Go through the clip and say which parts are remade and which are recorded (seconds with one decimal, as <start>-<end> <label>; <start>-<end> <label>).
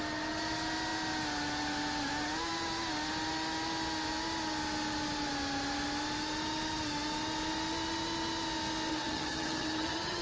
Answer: 0.0-8.9 recorded; 8.9-10.2 remade